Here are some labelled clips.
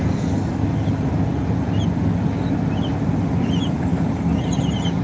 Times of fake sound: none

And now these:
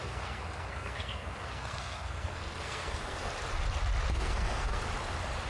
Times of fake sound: 0.0-3.3 (codec, SNAC); 4.1-4.8